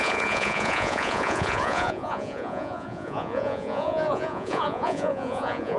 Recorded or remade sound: remade